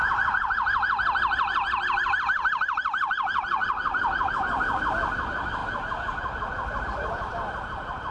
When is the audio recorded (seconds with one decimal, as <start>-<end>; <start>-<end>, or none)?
0.0-8.1

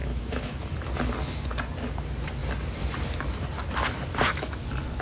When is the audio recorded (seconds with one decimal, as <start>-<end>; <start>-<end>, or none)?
0.9-5.0

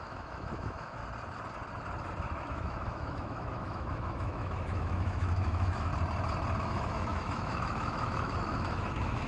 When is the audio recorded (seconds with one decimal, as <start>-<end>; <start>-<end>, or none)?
1.0-2.5; 5.9-6.6